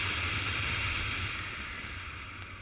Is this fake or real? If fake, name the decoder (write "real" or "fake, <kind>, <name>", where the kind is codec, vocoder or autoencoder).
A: real